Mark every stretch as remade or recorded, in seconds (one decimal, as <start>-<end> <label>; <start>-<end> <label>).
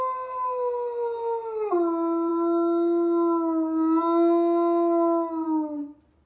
0.0-6.3 recorded